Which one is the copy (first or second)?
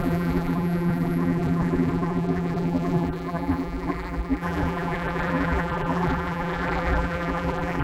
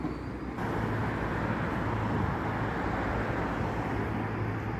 first